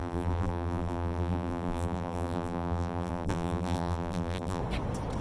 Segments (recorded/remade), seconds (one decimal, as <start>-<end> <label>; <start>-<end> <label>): 0.0-4.6 remade; 4.6-5.2 recorded